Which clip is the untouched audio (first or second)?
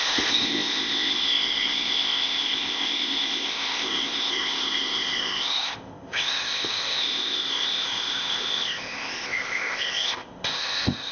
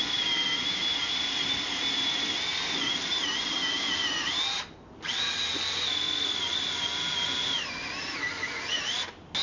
second